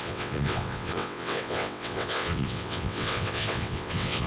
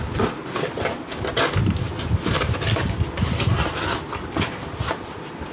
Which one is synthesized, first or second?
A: first